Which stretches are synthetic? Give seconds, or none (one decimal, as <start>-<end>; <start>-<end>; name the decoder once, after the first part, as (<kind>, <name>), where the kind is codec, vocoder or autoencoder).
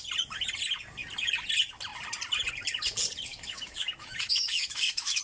3.3-5.2 (autoencoder, DAC-VAE)